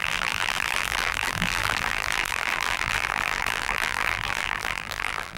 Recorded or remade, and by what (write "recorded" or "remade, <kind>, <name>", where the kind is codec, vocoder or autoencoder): remade, vocoder, BigVGAN v2